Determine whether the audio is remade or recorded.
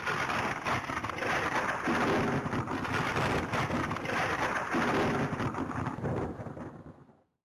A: recorded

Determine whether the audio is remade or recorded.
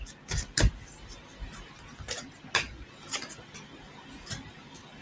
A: recorded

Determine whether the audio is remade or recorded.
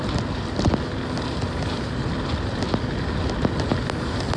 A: recorded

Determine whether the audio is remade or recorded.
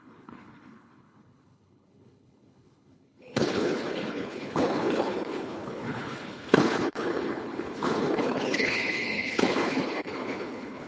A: remade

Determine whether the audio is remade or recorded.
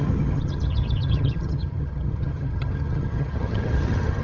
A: remade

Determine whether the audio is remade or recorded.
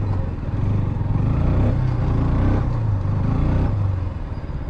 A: recorded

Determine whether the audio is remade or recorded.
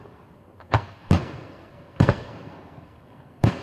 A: remade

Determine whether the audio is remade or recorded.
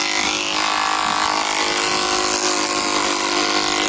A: recorded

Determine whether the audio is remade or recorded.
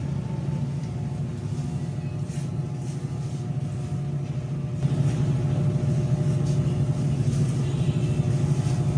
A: recorded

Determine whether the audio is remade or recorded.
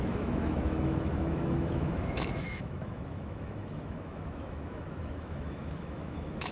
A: remade